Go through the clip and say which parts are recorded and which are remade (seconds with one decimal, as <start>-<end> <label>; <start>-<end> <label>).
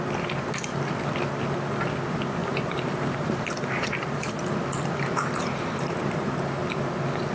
0.0-2.4 recorded; 2.4-4.3 remade; 4.3-7.3 recorded